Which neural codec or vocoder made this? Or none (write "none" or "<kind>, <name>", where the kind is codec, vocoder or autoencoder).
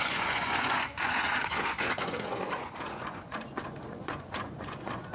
vocoder, Vocos